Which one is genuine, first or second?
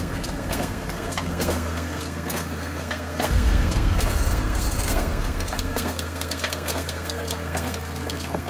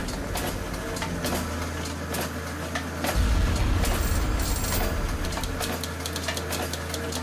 second